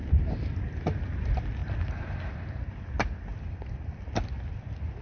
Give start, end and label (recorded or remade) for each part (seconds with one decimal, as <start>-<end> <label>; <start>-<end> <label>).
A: 0.0-1.6 recorded; 1.6-2.3 remade; 2.3-3.3 recorded; 3.3-4.0 remade; 4.0-5.0 recorded